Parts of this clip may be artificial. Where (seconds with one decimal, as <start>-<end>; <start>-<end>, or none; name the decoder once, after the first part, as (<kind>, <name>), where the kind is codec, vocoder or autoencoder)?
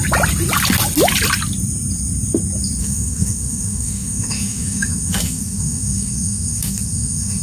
2.8-7.4 (autoencoder, DAC-VAE)